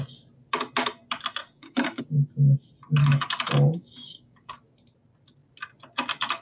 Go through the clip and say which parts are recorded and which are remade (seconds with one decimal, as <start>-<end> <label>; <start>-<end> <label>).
0.0-1.4 recorded; 1.4-2.0 remade; 2.0-3.0 recorded; 3.0-4.5 remade; 4.5-6.4 recorded